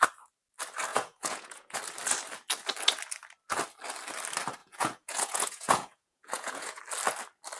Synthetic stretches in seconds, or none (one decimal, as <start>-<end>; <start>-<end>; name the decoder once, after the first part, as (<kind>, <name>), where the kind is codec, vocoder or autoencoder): 0.9-1.8 (vocoder, Vocos); 4.6-6.8